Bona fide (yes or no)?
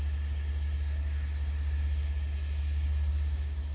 yes